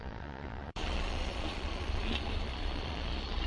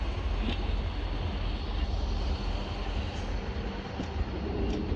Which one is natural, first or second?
second